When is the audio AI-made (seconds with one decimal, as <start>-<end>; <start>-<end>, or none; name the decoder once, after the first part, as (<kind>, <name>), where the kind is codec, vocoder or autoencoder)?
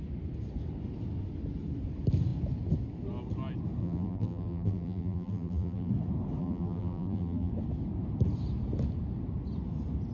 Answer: 3.8-5.9 (vocoder, BigVGAN v2); 6.4-7.5